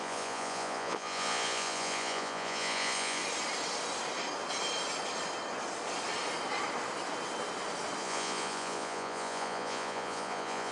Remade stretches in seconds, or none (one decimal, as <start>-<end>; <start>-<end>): 0.0-3.2; 8.0-10.7